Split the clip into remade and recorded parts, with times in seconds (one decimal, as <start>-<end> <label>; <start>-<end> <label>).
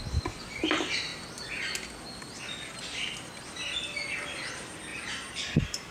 0.0-4.9 recorded; 4.9-5.9 remade